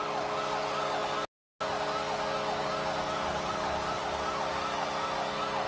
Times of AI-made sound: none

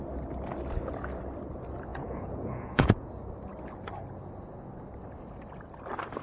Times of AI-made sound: 1.9-3.1 (vocoder, Vocos)